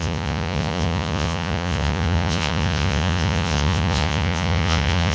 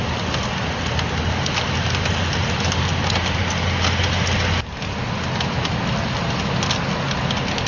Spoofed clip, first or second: first